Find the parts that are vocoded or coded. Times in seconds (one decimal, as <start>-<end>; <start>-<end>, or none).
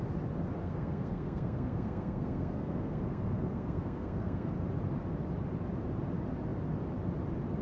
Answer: 0.6-4.5